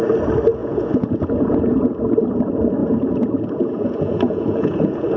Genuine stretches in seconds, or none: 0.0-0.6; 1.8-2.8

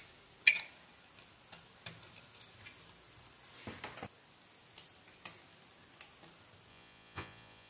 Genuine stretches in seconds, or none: 0.0-6.7

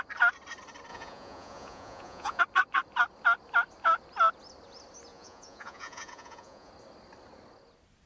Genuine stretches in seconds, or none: 0.0-0.9; 2.4-5.1; 6.7-8.1

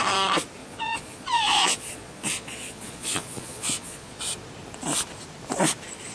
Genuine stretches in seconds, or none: 0.0-0.6; 4.2-6.1

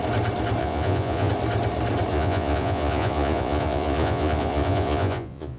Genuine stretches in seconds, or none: 0.0-0.6; 1.3-2.1

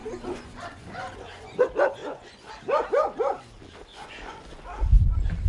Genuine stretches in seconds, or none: 1.6-2.0; 2.5-3.9; 4.6-5.5

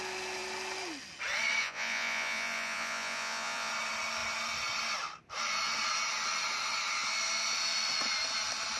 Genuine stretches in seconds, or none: 0.0-1.6; 3.7-8.8